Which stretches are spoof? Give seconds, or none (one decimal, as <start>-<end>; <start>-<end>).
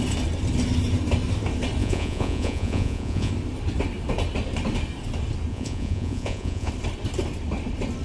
1.8-3.3; 5.5-6.7